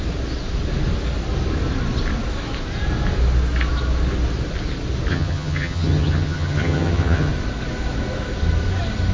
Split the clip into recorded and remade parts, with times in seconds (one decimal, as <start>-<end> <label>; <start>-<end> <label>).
0.0-5.1 recorded; 5.1-7.3 remade; 7.3-9.1 recorded